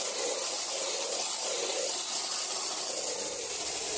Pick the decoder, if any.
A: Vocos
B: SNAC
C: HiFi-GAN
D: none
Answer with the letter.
D